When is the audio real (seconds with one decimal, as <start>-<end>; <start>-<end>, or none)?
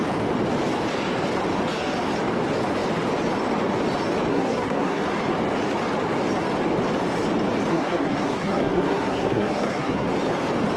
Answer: 0.0-4.3; 5.0-7.7; 10.1-10.8